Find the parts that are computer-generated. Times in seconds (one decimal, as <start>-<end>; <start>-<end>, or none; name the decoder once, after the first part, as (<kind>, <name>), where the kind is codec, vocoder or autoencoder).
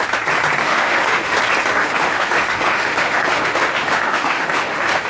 0.6-1.4 (autoencoder, DAC-VAE); 1.8-5.1